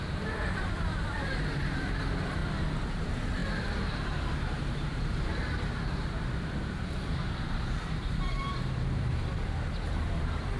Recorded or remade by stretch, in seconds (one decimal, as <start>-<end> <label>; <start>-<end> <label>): 0.0-2.4 remade; 2.4-3.0 recorded; 3.0-10.6 remade